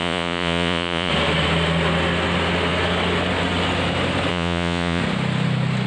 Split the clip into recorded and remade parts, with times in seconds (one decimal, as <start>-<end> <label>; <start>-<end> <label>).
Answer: 0.0-1.1 remade; 1.1-4.3 recorded; 4.3-5.0 remade; 5.0-5.9 recorded